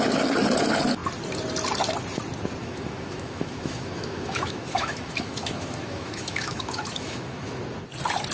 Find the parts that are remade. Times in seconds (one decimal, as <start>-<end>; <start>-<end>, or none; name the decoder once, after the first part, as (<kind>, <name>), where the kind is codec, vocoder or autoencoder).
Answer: 2.6-7.6 (autoencoder, DAC-VAE)